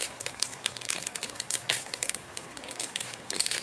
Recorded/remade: remade